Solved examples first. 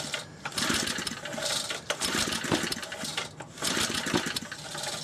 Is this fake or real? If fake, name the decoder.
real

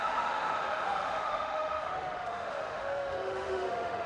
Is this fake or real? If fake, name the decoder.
fake, autoencoder, DAC-VAE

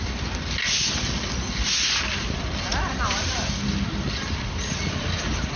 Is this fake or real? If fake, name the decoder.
real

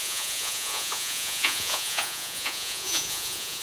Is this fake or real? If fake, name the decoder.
fake, vocoder, Vocos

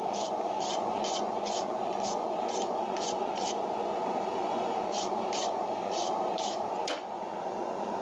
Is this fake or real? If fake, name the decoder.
fake, vocoder, Vocos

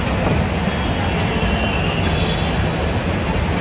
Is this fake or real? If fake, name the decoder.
real